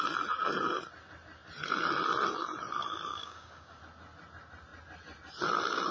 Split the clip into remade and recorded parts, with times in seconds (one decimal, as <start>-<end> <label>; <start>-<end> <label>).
0.0-3.1 recorded; 3.1-3.8 remade; 3.8-5.9 recorded